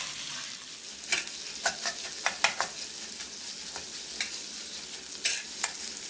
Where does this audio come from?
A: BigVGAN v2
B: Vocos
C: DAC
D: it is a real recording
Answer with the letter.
D